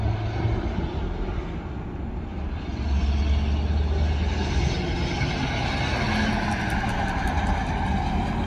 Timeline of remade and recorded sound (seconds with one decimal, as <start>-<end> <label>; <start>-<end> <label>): 0.0-8.5 recorded